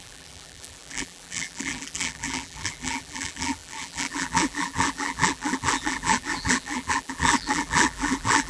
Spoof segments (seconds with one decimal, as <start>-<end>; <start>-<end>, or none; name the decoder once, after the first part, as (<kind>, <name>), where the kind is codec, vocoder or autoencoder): 0.0-8.5 (vocoder, BigVGAN v2)